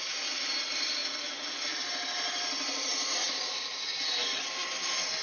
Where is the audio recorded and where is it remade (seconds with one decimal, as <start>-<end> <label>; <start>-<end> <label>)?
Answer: 0.0-5.2 recorded